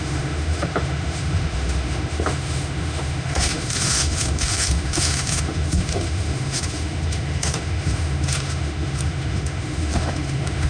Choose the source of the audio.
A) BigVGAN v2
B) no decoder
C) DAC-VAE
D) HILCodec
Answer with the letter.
C